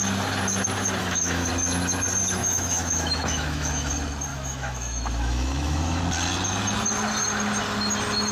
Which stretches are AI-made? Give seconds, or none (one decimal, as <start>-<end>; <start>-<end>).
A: 1.0-1.5; 2.4-3.9; 4.3-6.0

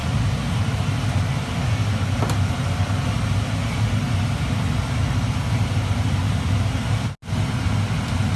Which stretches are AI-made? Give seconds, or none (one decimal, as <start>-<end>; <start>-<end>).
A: none

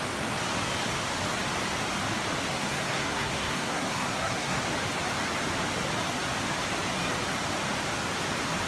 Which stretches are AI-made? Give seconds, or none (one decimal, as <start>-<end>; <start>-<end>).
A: 2.5-4.6

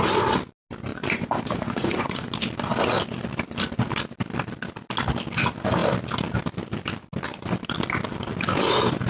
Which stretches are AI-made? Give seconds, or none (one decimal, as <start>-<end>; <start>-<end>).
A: 0.9-2.3

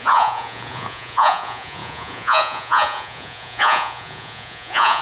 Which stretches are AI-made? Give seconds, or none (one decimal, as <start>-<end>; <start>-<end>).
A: 0.0-5.0

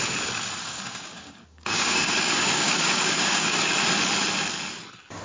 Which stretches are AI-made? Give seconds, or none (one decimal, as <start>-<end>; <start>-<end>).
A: 0.6-3.7

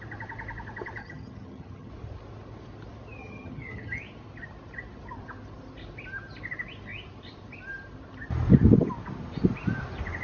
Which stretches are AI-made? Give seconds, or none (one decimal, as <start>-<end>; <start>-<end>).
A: 1.0-1.9; 3.2-4.0